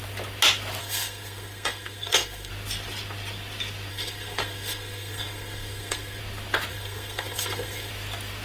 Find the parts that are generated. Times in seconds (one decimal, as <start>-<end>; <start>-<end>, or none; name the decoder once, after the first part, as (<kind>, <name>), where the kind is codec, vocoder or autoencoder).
0.8-2.5 (codec, SNAC); 3.9-6.2; 6.7-7.9